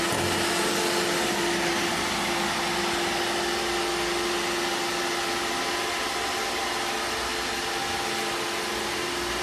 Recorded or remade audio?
recorded